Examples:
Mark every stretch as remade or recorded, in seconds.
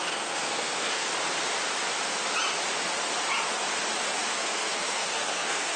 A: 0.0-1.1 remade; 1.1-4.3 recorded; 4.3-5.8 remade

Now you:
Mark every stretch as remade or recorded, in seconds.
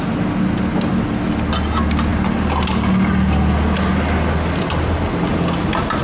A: 0.0-6.0 recorded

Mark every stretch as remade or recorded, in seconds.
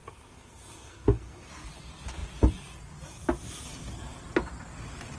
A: 0.0-1.5 remade; 1.5-5.2 recorded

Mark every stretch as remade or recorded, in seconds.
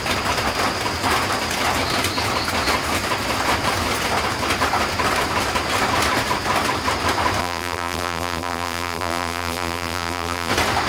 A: 0.0-7.4 recorded; 7.4-10.5 remade; 10.5-10.9 recorded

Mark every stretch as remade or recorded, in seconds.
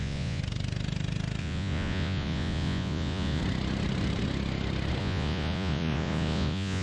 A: 0.0-0.4 remade; 0.4-1.4 recorded; 1.4-3.4 remade; 3.4-5.0 recorded; 5.0-6.8 remade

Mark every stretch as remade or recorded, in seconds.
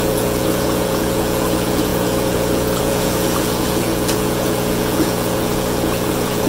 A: 0.0-6.5 remade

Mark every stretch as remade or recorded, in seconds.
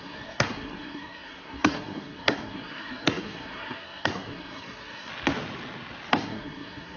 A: 0.0-5.1 remade; 5.1-6.1 recorded; 6.1-7.0 remade